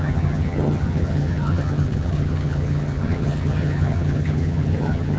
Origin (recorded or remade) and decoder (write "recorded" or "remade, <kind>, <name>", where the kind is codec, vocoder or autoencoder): remade, vocoder, HiFi-GAN